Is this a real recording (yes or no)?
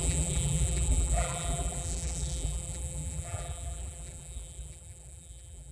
no